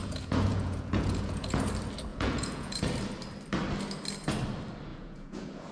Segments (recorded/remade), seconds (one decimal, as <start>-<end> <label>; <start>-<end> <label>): 0.0-1.7 remade; 1.7-2.1 recorded; 2.1-2.8 remade; 2.8-4.9 recorded; 4.9-5.7 remade